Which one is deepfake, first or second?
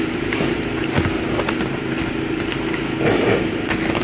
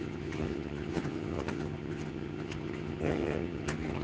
second